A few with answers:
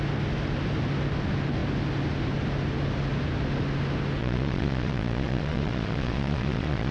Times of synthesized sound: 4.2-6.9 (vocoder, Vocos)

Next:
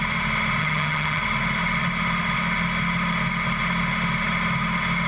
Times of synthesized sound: 0.6-1.2 (vocoder, HiFi-GAN)

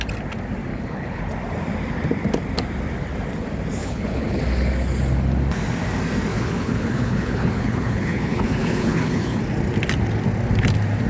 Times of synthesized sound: 0.7-1.2 (codec, HILCodec); 3.8-4.4; 6.3-9.4

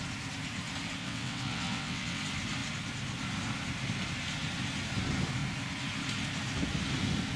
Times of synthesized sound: 1.0-2.2 (vocoder, WaveNeXt)

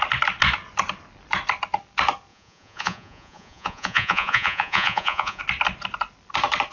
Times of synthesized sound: 2.3-5.4 (vocoder, Vocos)

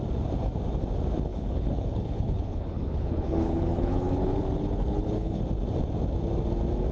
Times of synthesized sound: 1.3-5.4 (codec, HILCodec)